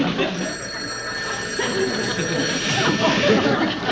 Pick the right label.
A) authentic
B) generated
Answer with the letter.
A